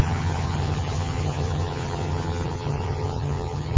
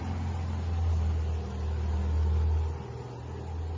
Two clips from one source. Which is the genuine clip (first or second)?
second